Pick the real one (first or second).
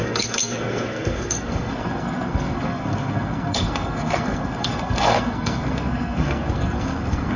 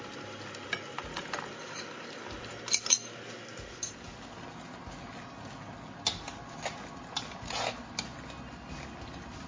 second